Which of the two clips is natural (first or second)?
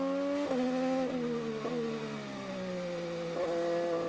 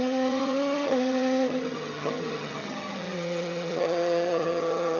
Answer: first